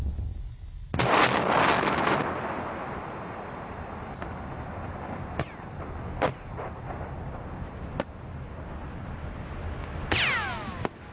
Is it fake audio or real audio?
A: real